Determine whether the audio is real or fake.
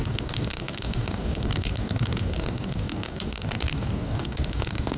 fake